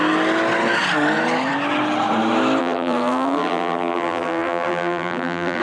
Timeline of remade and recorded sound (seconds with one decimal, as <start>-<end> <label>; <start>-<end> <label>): 0.0-2.6 recorded; 2.6-5.6 remade